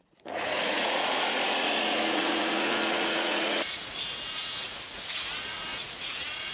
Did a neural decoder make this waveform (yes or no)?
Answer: yes